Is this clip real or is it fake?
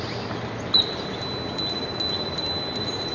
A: real